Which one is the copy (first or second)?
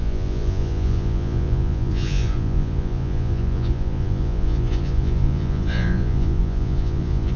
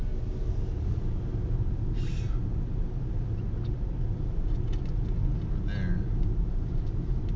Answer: first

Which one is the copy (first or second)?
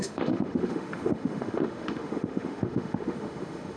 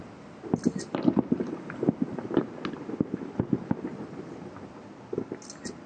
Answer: first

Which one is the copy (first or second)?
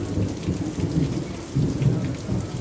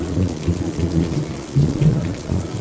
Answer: second